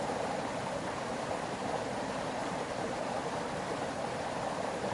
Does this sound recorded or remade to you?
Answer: remade